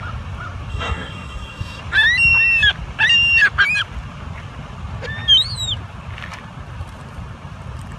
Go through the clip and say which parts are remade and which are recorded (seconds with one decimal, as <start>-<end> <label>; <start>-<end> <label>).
0.0-0.7 recorded; 0.7-1.8 remade; 1.8-8.0 recorded